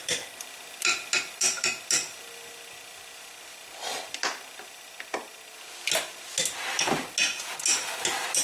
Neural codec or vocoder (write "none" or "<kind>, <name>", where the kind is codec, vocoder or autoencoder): none